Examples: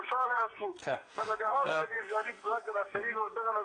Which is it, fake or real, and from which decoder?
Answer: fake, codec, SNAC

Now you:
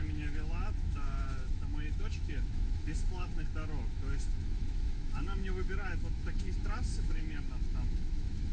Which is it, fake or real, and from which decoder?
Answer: fake, autoencoder, DAC-VAE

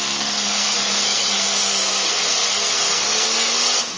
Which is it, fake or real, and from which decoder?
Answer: fake, codec, SNAC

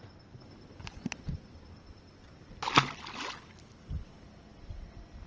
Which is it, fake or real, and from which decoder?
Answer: real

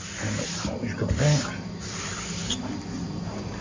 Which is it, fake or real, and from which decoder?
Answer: real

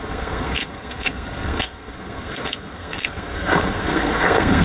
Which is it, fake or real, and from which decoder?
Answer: fake, codec, SNAC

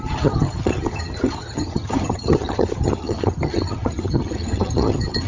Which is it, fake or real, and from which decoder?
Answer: fake, vocoder, HiFi-GAN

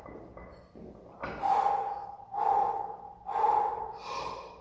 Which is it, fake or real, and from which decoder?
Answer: real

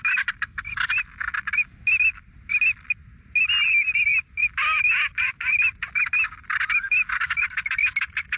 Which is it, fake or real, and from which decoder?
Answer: real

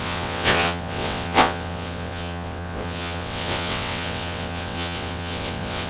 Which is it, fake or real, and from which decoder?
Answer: fake, vocoder, WaveNeXt